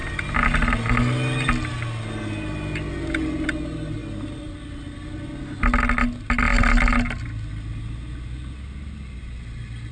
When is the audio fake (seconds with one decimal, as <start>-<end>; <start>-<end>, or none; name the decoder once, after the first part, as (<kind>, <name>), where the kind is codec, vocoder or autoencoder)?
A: none